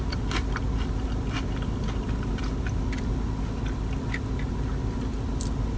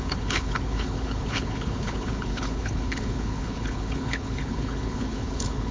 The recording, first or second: first